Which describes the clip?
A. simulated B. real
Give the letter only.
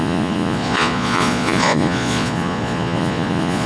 A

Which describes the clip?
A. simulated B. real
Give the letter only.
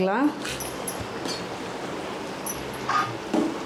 B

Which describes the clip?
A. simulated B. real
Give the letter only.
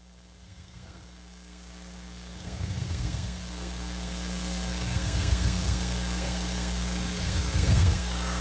A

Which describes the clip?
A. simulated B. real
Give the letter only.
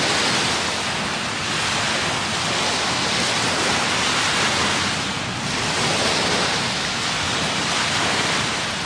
B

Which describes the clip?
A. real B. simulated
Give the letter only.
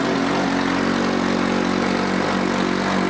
A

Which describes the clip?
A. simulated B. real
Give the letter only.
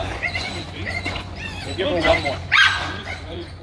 A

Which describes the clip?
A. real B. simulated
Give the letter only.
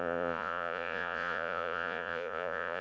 B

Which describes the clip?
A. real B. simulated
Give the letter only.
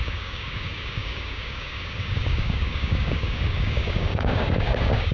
B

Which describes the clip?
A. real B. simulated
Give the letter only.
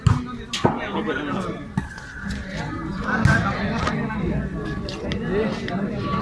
A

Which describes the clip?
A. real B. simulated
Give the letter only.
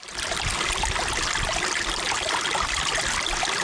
B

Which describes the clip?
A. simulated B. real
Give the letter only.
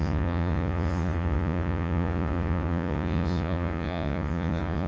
A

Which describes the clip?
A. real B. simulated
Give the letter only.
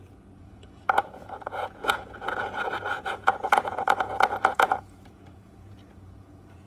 B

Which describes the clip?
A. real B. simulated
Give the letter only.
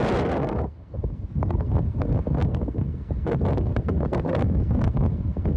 B